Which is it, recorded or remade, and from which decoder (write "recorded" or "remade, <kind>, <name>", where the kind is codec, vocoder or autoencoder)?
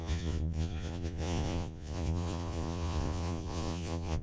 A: remade, vocoder, Vocos